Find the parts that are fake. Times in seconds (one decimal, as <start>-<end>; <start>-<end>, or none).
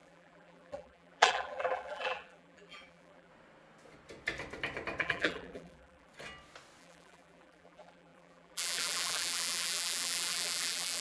0.0-3.3; 5.0-6.1; 6.8-11.0